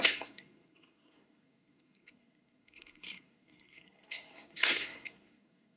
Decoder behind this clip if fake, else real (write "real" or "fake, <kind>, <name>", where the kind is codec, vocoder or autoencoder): fake, codec, SNAC